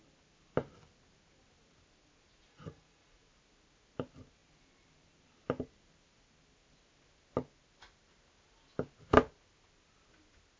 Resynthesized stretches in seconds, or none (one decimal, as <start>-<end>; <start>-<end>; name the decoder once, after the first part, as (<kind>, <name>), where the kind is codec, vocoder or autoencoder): 2.4-3.2 (vocoder, Vocos)